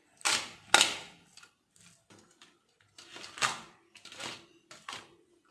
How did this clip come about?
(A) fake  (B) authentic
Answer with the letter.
B